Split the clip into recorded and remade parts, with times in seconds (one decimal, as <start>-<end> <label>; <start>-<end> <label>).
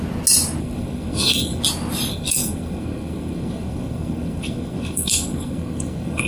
0.0-0.6 recorded; 0.6-1.6 remade; 1.6-2.1 recorded; 2.1-6.3 remade